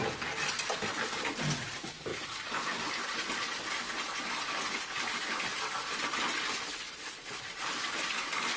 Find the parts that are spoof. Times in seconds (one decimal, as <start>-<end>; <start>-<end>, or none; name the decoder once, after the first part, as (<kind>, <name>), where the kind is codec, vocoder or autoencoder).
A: none